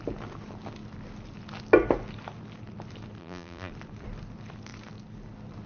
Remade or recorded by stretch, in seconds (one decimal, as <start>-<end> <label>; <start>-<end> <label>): 0.0-3.2 recorded; 3.2-3.7 remade; 3.7-5.7 recorded